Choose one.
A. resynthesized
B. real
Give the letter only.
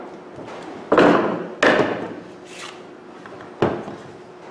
B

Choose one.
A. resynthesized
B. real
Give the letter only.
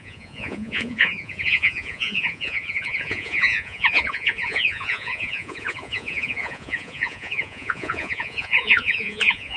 A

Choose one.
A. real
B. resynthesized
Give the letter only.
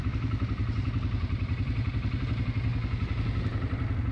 A